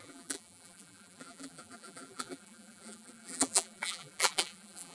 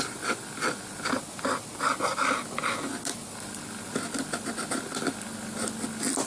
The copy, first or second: first